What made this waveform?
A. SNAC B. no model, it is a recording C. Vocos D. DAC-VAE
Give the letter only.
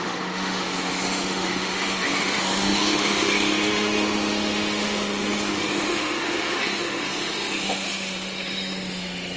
D